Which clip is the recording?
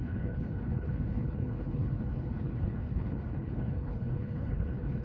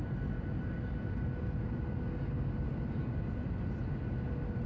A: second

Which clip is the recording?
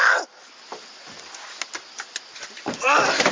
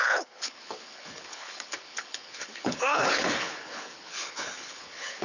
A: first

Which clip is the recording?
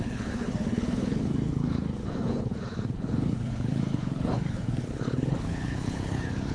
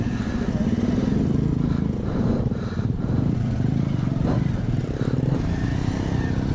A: second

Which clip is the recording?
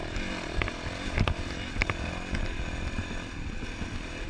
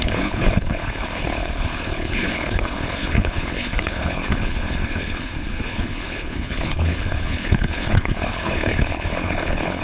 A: first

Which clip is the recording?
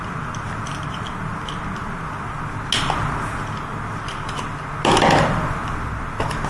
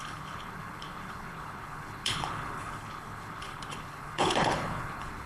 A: first